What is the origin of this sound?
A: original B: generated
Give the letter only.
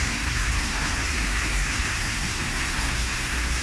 B